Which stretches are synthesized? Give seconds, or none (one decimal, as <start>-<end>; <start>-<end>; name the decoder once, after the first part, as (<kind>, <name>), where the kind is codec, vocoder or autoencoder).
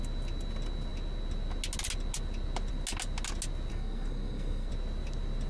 3.7-4.7 (codec, SNAC)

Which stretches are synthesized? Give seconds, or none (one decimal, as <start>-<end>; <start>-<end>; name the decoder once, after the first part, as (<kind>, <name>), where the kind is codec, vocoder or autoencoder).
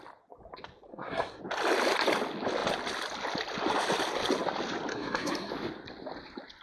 0.9-1.4 (codec, SNAC); 4.9-5.5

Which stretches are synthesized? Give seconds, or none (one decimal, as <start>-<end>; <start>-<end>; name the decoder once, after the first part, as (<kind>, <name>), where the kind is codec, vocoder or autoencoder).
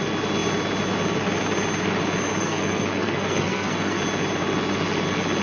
2.4-4.0 (codec, SNAC)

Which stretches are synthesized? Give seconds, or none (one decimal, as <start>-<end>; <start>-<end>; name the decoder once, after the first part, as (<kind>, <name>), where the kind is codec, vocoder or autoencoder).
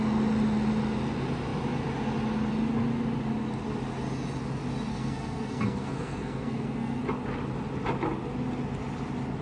4.9-7.0 (codec, SNAC)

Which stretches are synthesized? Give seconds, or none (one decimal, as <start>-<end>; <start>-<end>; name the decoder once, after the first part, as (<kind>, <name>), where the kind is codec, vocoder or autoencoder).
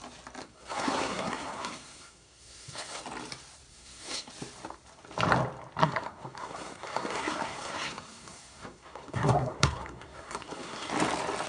0.4-3.0 (codec, SNAC); 3.7-4.3; 5.8-10.9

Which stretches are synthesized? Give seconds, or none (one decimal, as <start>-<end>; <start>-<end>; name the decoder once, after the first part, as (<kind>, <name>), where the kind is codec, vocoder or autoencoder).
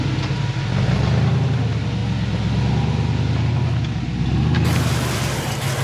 none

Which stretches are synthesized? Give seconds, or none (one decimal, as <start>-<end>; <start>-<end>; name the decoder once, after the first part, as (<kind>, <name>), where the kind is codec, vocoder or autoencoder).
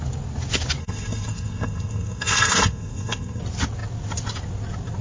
0.8-3.4 (codec, SNAC)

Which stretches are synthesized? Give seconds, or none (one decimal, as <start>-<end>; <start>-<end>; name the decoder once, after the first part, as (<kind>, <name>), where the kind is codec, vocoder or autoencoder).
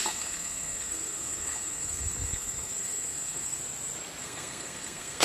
0.0-3.6 (codec, SNAC); 4.2-5.2